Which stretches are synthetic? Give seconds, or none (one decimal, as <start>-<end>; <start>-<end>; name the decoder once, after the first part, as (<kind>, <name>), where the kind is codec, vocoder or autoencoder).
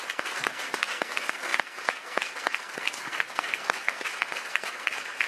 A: 0.0-5.3 (codec, SNAC)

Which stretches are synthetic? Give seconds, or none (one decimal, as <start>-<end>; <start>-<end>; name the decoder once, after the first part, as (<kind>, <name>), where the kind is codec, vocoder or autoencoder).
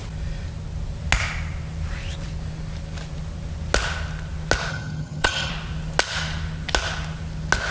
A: 4.7-5.5 (vocoder, HiFi-GAN)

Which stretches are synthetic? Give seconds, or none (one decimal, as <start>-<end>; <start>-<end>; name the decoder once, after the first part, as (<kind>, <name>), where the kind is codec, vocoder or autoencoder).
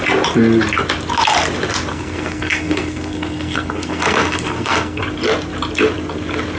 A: 1.9-5.0 (codec, SNAC)